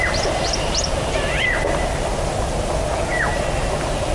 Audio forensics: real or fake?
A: real